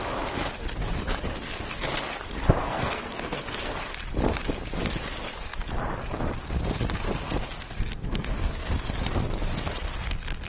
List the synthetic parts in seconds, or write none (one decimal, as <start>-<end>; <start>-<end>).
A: 2.6-3.8; 8.0-8.7